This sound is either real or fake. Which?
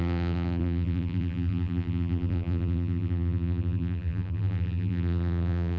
fake